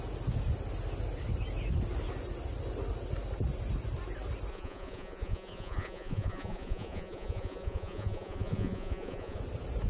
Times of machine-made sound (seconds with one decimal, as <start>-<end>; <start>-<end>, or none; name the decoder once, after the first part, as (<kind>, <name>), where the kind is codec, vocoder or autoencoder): 4.5-9.4 (vocoder, Vocos)